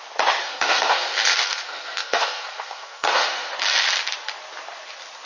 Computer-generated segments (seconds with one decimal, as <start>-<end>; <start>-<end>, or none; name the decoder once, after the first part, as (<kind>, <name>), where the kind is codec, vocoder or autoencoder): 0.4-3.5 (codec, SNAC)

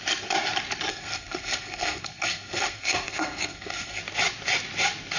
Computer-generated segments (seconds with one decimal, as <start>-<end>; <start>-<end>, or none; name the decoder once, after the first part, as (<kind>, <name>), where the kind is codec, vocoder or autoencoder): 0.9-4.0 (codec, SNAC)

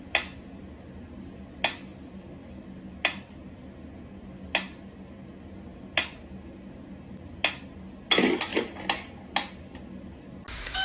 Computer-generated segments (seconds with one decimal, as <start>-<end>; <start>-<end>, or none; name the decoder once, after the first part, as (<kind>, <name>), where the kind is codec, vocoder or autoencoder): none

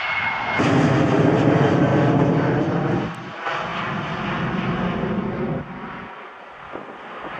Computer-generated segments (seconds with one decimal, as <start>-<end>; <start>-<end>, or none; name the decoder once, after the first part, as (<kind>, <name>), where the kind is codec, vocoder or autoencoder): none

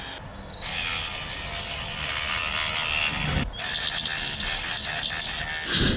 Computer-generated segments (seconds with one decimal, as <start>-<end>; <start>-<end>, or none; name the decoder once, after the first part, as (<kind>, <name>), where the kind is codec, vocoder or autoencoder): none